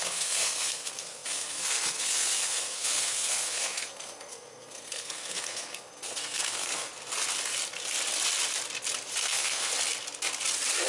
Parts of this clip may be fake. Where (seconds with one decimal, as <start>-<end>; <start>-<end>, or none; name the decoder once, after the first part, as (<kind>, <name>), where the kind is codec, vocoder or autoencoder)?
0.0-6.9 (codec, SNAC); 9.2-9.7